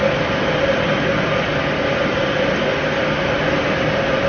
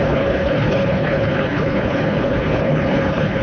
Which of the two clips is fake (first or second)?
second